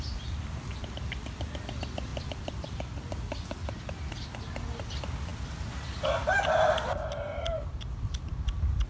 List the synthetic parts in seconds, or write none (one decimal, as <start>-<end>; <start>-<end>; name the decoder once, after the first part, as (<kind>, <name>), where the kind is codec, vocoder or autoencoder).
none